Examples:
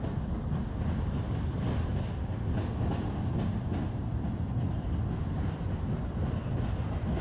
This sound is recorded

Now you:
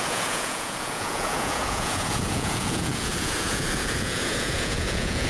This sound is remade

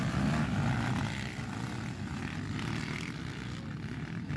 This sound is recorded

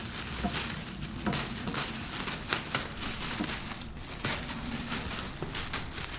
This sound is recorded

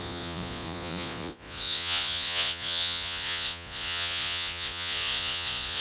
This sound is remade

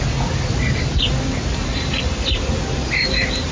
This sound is recorded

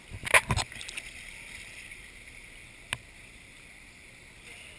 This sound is recorded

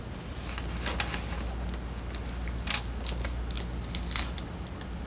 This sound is recorded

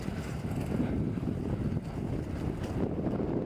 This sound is recorded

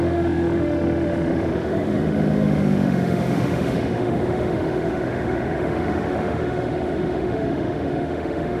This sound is remade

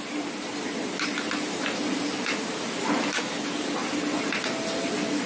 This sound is recorded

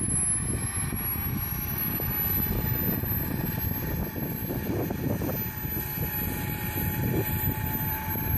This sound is recorded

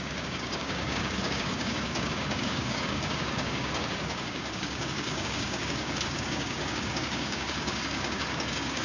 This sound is remade